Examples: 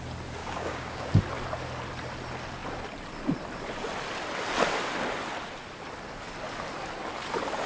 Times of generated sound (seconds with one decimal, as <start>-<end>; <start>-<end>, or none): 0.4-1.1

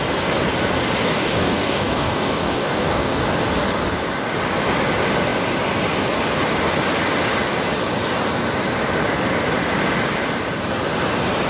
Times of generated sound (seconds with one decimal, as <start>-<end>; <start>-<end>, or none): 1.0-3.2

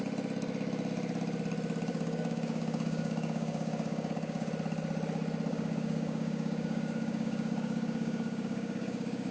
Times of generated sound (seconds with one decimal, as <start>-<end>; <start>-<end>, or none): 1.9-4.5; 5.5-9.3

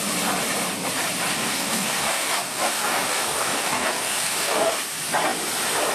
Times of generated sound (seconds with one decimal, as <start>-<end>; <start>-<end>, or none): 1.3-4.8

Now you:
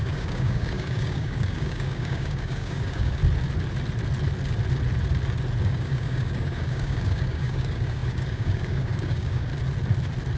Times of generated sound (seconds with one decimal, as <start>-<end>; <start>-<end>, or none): 0.0-3.2; 5.6-9.5

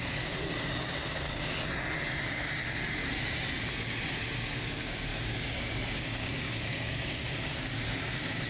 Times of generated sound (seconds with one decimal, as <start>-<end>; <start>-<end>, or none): 0.0-1.5; 2.2-3.0; 3.7-8.5

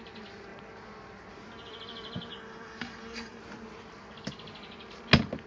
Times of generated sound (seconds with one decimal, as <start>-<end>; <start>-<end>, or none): 2.3-3.4

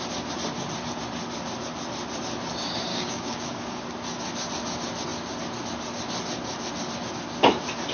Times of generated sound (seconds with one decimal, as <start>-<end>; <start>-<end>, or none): 2.9-3.8